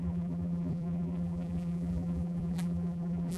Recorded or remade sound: remade